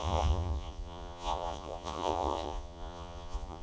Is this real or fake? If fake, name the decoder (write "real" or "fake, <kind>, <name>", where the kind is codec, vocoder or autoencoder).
fake, vocoder, Vocos